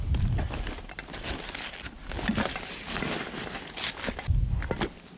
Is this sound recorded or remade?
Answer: recorded